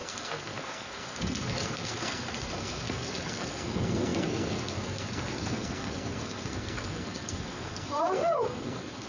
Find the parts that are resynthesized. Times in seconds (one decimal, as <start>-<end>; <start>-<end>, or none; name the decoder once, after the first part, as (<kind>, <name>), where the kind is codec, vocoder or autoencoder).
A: 0.0-9.1 (codec, SNAC)